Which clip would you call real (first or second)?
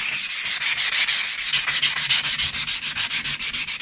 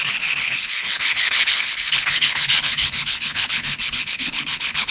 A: first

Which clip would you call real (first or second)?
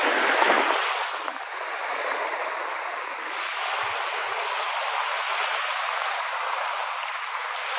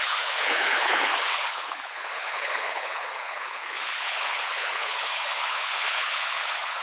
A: first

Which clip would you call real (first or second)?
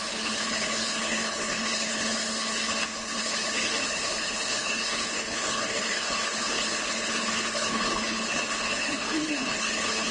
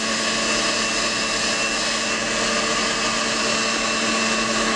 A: second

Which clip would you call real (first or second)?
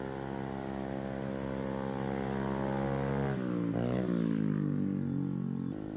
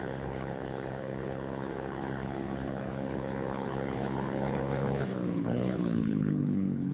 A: first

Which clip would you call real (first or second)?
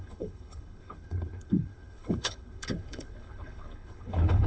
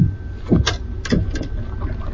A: second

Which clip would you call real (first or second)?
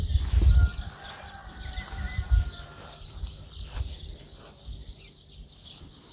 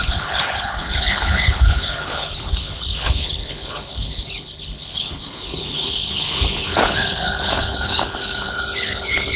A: first